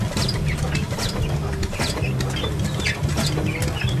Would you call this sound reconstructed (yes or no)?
no